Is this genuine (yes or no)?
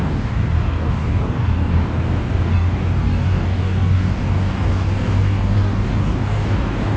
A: no